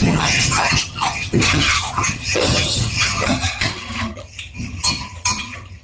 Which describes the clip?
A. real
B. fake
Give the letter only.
B